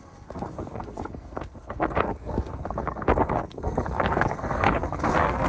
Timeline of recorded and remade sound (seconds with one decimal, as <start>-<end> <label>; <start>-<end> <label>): 0.0-5.5 remade